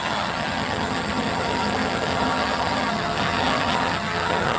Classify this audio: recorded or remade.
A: remade